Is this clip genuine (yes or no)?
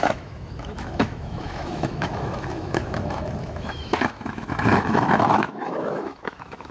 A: no